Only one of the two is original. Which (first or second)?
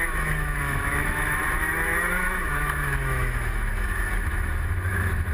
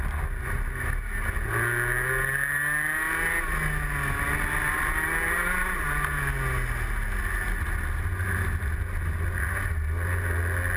second